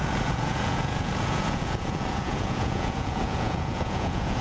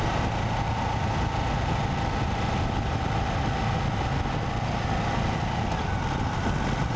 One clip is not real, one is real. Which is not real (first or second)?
first